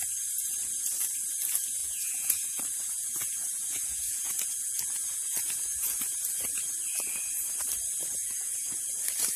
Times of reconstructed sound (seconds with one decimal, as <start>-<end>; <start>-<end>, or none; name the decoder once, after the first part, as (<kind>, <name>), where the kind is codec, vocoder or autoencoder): 1.8-6.0 (vocoder, Vocos); 8.2-9.0